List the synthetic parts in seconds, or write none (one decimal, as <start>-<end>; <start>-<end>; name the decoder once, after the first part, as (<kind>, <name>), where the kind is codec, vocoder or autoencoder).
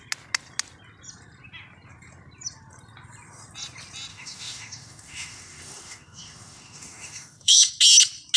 4.1-7.7 (autoencoder, DAC-VAE)